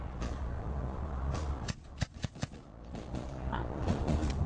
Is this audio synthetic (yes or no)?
yes